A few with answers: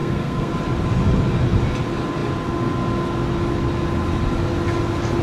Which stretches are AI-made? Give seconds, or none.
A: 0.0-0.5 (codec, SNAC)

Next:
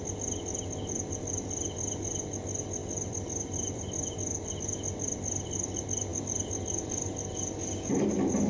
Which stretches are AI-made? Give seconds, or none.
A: 2.8-3.8 (vocoder, BigVGAN v2)

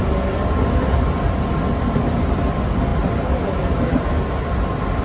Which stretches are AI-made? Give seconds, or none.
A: none

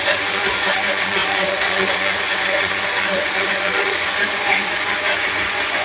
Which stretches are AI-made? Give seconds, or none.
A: 0.0-5.8 (vocoder, Vocos)

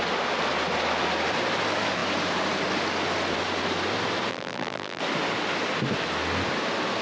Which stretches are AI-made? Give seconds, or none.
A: 4.3-5.0 (vocoder, BigVGAN v2)

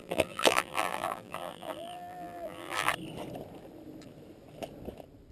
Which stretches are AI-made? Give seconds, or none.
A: 0.0-2.9 (vocoder, BigVGAN v2)

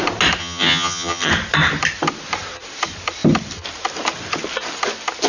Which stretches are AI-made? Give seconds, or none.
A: 0.4-1.3 (vocoder, HiFi-GAN)

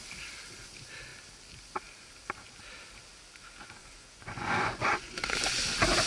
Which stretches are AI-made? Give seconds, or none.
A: 3.8-5.6 (vocoder, Vocos)